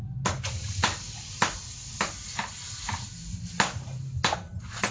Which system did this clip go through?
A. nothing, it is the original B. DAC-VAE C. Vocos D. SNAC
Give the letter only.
A